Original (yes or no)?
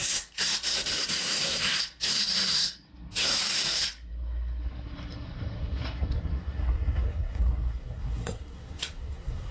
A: no